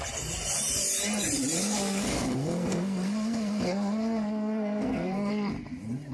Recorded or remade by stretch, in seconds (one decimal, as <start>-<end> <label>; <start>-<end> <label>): 0.0-1.6 recorded; 1.6-5.3 remade; 5.3-6.1 recorded